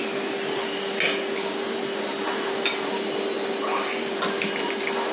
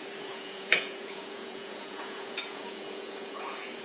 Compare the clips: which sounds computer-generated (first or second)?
second